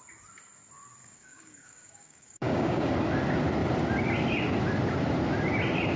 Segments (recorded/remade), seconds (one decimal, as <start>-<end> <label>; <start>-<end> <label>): 0.0-1.0 recorded; 1.0-2.9 remade; 2.9-6.0 recorded